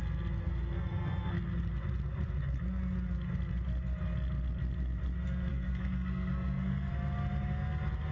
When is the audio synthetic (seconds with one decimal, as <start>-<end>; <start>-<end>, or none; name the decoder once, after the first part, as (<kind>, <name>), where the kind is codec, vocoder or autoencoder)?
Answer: 0.4-1.5 (codec, SNAC); 5.5-6.9